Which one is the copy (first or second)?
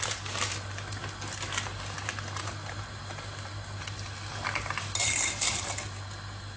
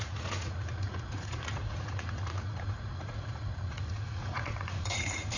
second